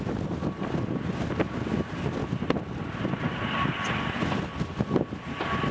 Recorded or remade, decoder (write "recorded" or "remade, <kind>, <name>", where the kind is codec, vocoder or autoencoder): recorded